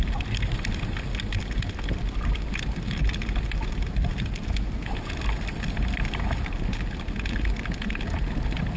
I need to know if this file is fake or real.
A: real